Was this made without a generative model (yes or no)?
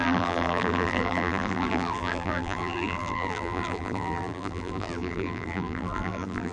no